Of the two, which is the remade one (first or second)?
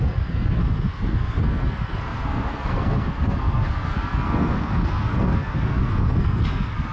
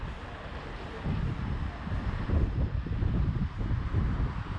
first